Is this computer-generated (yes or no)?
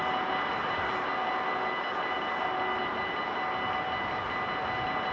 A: no